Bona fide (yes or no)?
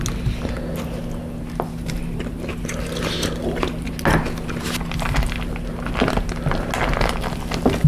yes